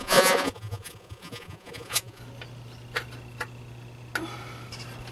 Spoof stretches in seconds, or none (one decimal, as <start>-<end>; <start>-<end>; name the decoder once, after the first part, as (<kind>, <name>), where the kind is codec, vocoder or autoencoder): 0.0-2.2 (vocoder, Vocos)